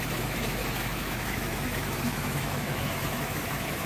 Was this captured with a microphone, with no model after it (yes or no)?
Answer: no